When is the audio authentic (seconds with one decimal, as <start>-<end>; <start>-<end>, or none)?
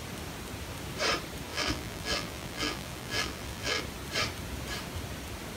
0.0-1.5; 3.8-5.6